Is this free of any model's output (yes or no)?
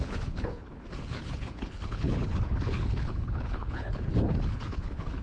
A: no